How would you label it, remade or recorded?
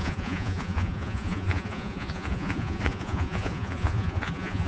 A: remade